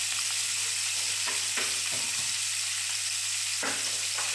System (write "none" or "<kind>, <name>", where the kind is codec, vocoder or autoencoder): none